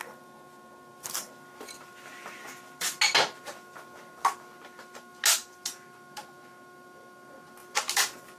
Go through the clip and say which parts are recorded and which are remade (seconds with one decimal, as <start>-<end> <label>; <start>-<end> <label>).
0.0-0.9 recorded; 0.9-3.0 remade; 3.0-7.6 recorded; 7.6-8.4 remade